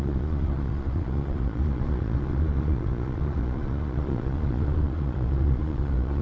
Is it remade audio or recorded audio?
remade